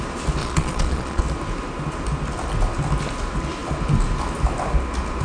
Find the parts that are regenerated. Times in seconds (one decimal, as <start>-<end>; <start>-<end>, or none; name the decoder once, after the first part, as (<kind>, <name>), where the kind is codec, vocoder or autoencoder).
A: 0.4-1.2 (vocoder, Vocos)